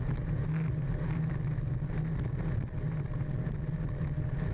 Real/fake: real